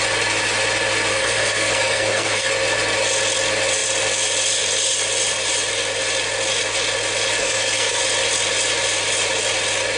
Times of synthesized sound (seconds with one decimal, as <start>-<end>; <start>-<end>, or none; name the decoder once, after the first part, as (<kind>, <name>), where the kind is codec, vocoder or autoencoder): 1.1-2.5 (codec, SNAC); 7.4-8.0